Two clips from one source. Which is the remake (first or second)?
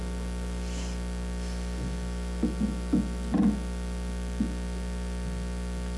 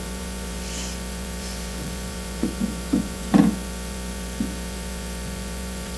second